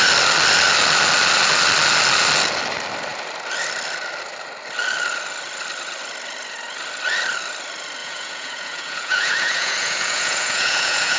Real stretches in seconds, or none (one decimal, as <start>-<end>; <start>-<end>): 0.0-8.0